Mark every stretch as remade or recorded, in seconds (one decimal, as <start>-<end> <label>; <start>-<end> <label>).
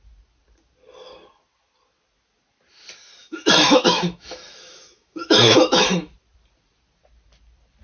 0.0-3.2 recorded; 3.2-6.1 remade; 6.1-7.8 recorded